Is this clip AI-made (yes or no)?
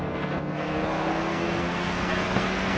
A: yes